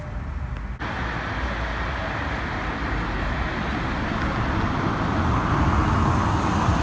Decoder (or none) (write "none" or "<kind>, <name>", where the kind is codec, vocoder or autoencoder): none